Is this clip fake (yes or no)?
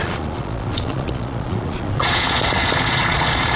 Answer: yes